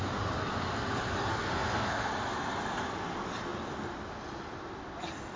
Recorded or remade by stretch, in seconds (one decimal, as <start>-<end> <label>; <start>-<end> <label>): 0.0-1.3 recorded; 1.3-2.1 remade; 2.1-5.4 recorded